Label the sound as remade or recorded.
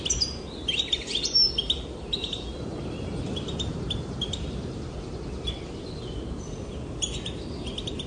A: recorded